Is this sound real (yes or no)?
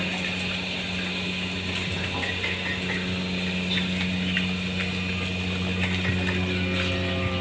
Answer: yes